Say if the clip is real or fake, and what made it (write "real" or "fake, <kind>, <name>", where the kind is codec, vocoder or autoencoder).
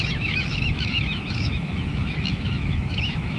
fake, autoencoder, DAC-VAE